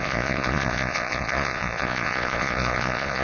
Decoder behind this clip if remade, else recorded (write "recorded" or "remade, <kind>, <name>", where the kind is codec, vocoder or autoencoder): remade, vocoder, Vocos